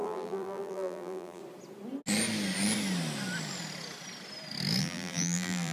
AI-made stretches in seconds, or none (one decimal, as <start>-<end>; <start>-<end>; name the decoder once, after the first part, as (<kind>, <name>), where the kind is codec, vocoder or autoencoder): 0.0-1.4 (vocoder, BigVGAN v2); 4.8-5.7